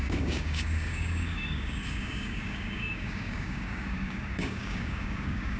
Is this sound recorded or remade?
remade